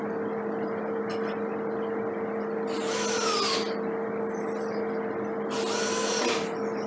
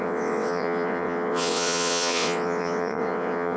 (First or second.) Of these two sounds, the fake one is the second